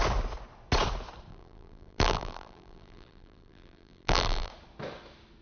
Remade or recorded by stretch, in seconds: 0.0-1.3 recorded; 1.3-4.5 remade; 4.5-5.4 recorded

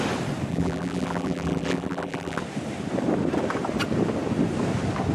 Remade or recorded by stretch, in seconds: 0.0-0.5 recorded; 0.5-2.4 remade; 2.4-5.1 recorded

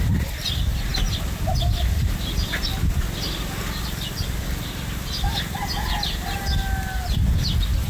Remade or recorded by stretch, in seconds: 0.0-7.9 recorded

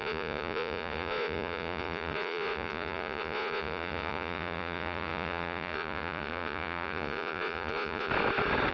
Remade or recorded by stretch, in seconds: 0.0-8.1 remade; 8.1-8.7 recorded

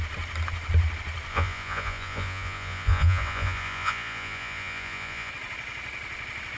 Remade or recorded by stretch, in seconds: 0.0-1.3 recorded; 1.3-5.3 remade; 5.3-6.6 recorded

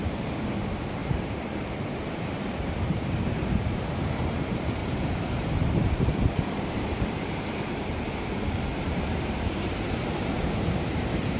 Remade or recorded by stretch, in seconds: 0.0-10.0 remade; 10.0-11.0 recorded; 11.0-11.4 remade

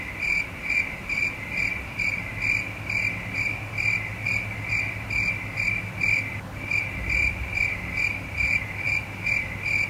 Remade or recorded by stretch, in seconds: 0.0-9.9 recorded

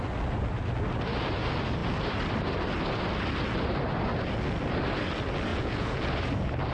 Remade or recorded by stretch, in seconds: 0.0-5.5 recorded; 5.5-6.0 remade; 6.0-6.7 recorded